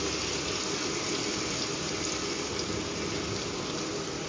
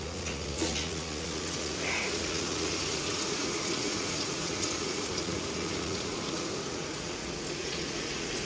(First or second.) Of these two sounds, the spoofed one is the second